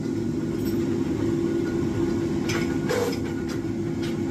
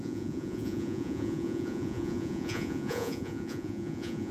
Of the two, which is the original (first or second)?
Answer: first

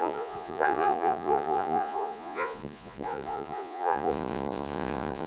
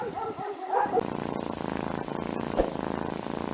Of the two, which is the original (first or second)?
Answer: second